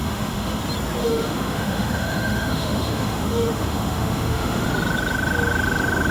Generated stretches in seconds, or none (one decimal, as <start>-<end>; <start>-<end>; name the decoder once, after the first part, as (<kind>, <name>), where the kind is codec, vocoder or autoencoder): 0.0-0.6 (autoencoder, DAC-VAE); 1.0-4.7